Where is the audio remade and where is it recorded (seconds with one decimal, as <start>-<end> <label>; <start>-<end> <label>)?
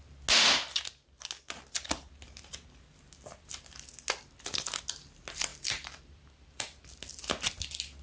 0.0-5.5 recorded; 5.5-6.9 remade; 6.9-8.0 recorded